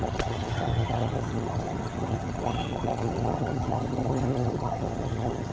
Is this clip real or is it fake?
fake